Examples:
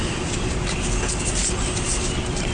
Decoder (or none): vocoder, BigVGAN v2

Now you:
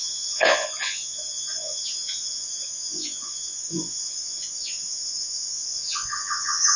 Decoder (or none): vocoder, Vocos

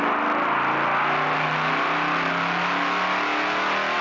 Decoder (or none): none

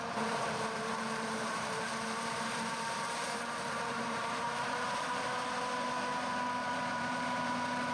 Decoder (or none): vocoder, BigVGAN v2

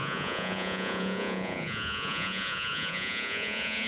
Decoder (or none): vocoder, Vocos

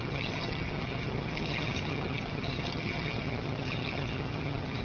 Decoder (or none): vocoder, HiFi-GAN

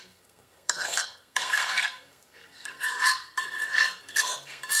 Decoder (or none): codec, SNAC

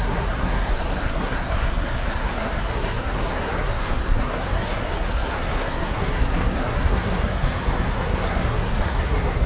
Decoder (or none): codec, SNAC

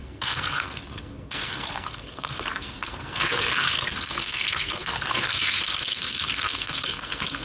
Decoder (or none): codec, SNAC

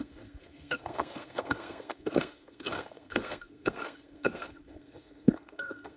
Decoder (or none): codec, SNAC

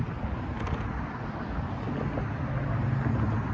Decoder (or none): none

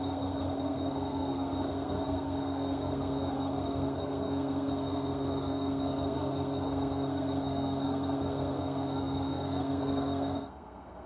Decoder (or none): codec, SNAC